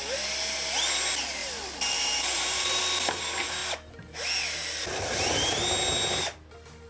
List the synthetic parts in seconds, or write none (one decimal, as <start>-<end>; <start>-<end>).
1.4-2.8